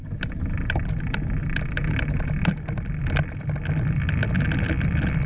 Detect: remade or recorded recorded